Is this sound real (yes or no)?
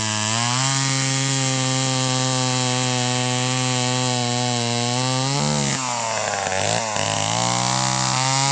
yes